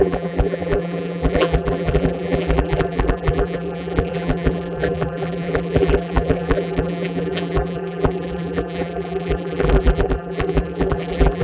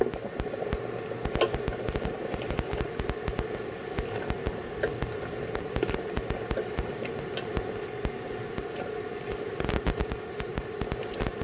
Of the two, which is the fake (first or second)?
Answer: first